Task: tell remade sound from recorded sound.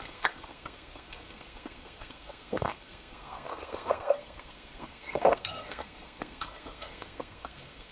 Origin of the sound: remade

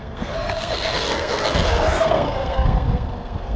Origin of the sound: remade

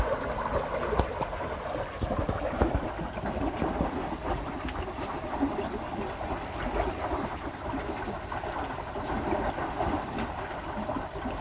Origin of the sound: recorded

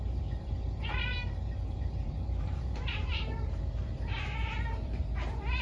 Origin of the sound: remade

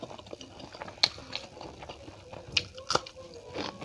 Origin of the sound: recorded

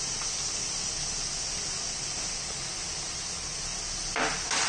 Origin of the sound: recorded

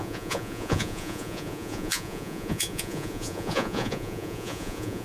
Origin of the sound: remade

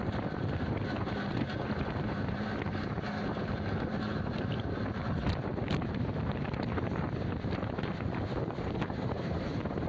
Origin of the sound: remade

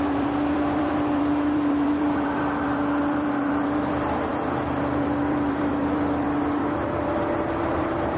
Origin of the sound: remade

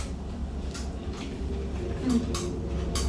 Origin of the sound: recorded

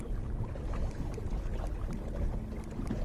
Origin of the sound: recorded